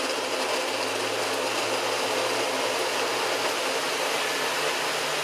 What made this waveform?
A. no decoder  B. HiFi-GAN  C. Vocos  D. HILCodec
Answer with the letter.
A